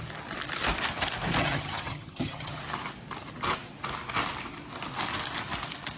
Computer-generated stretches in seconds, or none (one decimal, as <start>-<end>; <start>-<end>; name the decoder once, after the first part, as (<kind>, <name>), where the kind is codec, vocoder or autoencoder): 1.4-2.6 (vocoder, HiFi-GAN)